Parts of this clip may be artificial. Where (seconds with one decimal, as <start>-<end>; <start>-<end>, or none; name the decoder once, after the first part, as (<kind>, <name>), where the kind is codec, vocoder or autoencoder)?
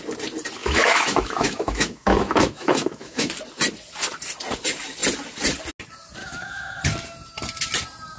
0.6-3.3 (autoencoder, DAC-VAE); 6.2-6.8